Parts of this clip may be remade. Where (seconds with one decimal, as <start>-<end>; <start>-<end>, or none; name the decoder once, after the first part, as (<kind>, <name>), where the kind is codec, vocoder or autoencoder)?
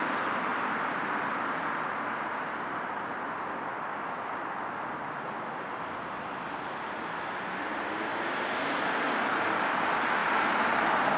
0.5-1.1 (vocoder, BigVGAN v2); 10.2-11.2